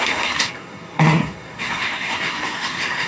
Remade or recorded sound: remade